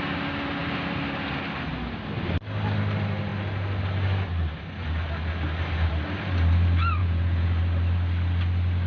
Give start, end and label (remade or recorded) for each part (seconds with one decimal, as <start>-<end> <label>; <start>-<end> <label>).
0.0-7.0 recorded; 7.0-7.6 remade; 7.6-8.9 recorded